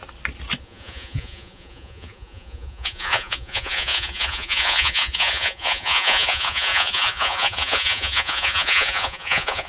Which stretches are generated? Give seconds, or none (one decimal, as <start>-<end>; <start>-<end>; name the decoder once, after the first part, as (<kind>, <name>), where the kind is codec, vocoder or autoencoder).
0.6-9.7 (vocoder, Vocos)